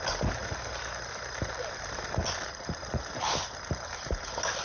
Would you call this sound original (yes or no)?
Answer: yes